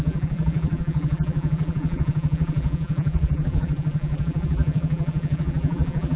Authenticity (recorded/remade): remade